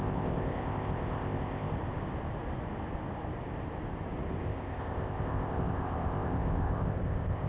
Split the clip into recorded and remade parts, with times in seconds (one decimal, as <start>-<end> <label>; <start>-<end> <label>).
0.0-1.7 remade; 1.7-4.4 recorded; 4.4-7.5 remade